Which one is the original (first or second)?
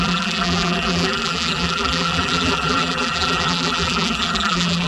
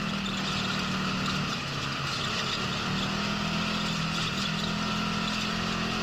second